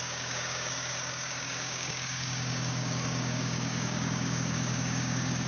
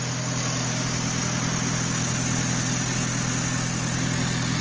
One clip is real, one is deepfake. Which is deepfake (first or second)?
first